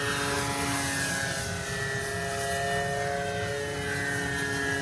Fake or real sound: real